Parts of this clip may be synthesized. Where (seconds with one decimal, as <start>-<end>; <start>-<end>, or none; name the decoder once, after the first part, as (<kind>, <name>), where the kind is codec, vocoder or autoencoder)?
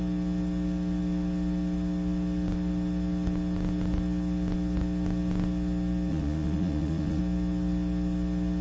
6.1-7.2 (vocoder, Vocos)